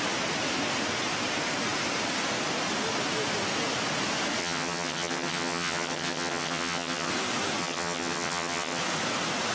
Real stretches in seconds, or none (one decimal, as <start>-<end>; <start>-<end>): 0.0-4.4; 7.1-7.6; 8.8-9.5